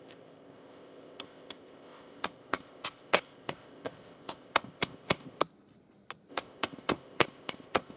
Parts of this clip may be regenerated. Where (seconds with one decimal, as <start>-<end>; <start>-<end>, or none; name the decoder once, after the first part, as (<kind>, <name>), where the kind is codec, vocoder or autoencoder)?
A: 0.0-5.4 (codec, ZipCodec); 6.3-8.0